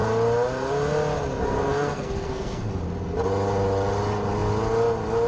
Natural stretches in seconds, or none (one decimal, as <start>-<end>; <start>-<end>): 0.0-1.5; 2.7-5.3